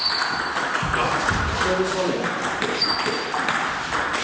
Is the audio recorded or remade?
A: recorded